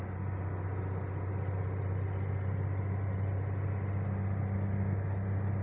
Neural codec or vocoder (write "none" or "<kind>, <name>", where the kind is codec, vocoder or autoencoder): none